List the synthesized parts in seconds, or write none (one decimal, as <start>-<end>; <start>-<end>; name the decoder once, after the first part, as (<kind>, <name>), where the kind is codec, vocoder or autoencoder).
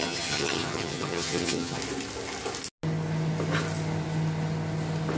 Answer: 0.0-1.8 (vocoder, HiFi-GAN)